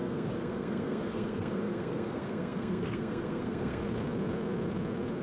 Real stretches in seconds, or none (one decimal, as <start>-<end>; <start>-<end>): 3.8-5.2